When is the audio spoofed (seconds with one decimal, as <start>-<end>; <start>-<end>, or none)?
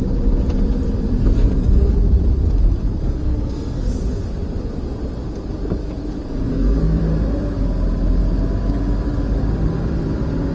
1.2-1.9; 3.0-3.9; 6.5-7.0